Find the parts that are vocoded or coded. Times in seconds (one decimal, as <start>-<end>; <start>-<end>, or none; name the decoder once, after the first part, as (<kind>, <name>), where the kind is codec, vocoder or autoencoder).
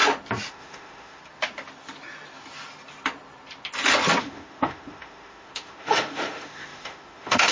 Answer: 0.5-1.2 (autoencoder, DAC-VAE); 4.2-7.5